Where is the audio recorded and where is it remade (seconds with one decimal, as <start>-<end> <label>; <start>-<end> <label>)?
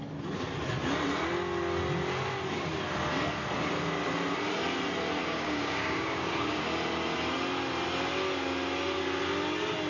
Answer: 0.0-5.2 recorded; 5.2-6.6 remade; 6.6-9.9 recorded